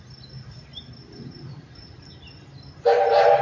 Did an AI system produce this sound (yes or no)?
no